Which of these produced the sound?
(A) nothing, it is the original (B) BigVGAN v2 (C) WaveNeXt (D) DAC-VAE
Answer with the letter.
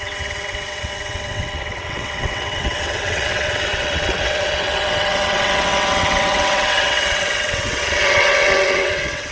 C